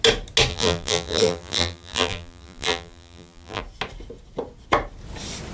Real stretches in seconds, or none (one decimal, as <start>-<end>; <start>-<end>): 0.0-0.5; 3.6-5.5